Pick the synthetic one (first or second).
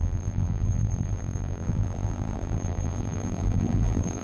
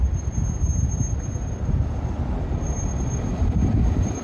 first